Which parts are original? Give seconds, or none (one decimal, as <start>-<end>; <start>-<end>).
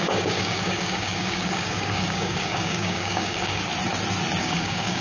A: 3.7-4.4